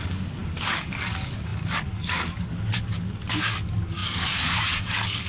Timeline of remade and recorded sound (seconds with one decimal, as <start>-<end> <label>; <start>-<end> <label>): 0.0-5.3 remade

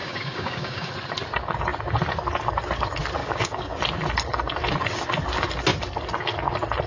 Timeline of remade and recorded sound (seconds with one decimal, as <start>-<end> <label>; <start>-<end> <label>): 0.0-0.9 remade; 0.9-3.2 recorded; 3.2-3.8 remade; 3.8-6.9 recorded

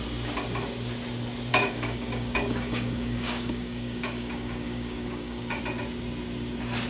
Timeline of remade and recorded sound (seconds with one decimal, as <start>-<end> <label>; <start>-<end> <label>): 0.0-1.5 recorded; 1.5-5.6 remade; 5.6-6.9 recorded